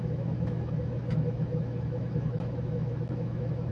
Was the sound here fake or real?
fake